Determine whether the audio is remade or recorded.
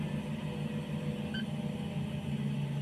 recorded